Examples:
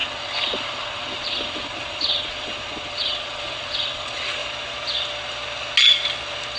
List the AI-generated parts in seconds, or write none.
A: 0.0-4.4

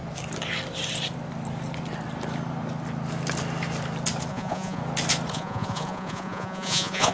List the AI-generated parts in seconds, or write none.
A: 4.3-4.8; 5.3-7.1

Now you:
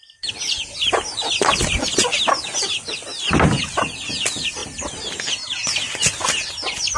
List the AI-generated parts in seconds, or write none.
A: none

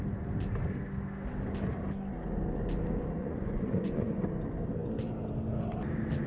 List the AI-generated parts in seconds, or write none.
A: 3.2-4.2

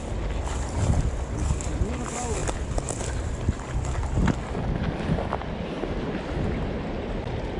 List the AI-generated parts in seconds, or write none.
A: none